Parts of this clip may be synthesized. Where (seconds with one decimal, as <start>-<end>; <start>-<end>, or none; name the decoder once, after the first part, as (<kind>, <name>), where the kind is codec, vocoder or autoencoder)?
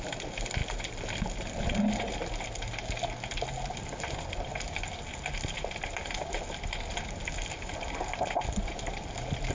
none